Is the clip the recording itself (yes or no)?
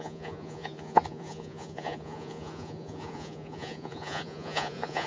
no